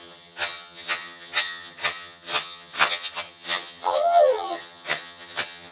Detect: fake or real fake